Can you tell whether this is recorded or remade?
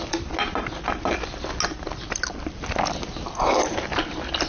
recorded